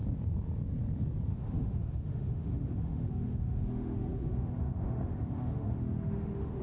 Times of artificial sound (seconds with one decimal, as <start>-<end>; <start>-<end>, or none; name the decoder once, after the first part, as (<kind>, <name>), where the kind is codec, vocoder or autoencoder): 1.3-6.6 (autoencoder, DAC-VAE)